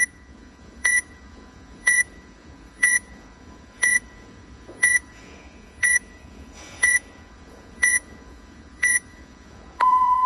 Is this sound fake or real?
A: fake